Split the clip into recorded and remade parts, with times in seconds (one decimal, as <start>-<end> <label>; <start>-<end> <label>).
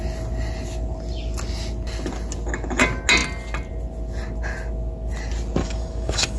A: 0.0-5.6 recorded; 5.6-6.4 remade